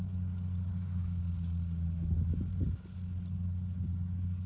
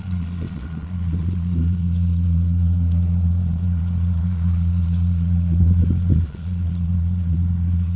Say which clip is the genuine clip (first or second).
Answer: first